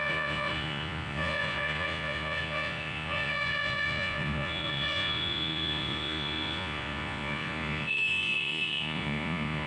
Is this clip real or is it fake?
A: fake